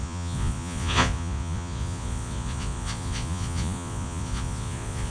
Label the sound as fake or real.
fake